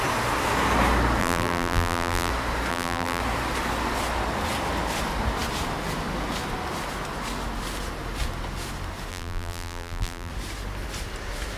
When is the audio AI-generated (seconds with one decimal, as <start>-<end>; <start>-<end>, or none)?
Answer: 1.2-2.3; 2.7-3.2; 9.1-10.3